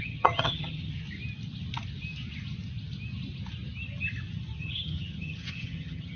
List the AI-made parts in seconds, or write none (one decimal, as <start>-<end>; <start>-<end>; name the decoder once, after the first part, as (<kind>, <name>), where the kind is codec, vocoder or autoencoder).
0.0-0.9 (vocoder, HiFi-GAN); 4.6-6.2